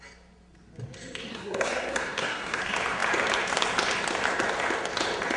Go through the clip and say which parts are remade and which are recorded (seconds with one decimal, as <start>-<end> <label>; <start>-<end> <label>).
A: 0.0-1.3 recorded; 1.3-2.6 remade; 2.6-5.4 recorded

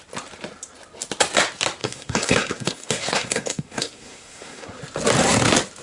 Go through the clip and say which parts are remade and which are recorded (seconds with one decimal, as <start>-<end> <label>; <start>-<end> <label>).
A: 0.0-1.8 recorded; 1.8-4.8 remade; 4.8-5.8 recorded

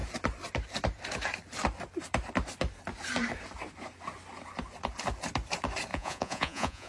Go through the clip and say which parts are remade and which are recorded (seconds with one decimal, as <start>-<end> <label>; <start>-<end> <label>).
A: 0.0-5.9 recorded; 5.9-6.9 remade

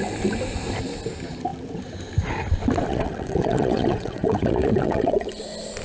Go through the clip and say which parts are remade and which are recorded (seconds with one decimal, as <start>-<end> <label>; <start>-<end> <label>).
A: 0.0-2.9 recorded; 2.9-5.3 remade; 5.3-5.8 recorded